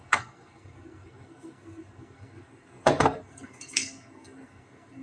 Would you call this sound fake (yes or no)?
yes